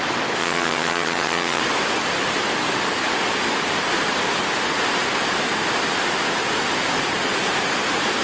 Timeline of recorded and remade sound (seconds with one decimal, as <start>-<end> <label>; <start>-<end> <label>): 0.0-0.4 recorded; 0.4-1.6 remade; 1.6-8.2 recorded